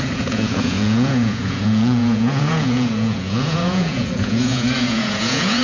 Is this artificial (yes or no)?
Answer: yes